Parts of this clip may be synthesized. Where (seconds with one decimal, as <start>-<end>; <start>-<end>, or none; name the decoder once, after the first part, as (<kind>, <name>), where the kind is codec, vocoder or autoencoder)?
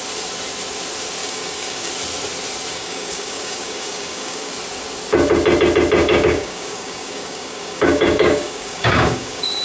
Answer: 1.2-1.9 (codec, DAC); 2.7-4.5; 6.0-9.6